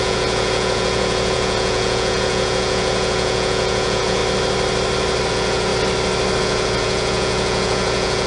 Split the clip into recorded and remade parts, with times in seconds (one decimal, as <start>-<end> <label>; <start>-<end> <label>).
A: 0.0-4.2 remade; 4.2-5.3 recorded; 5.3-5.7 remade; 5.7-6.4 recorded; 6.4-8.3 remade